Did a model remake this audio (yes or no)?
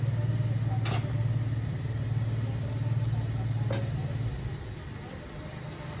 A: no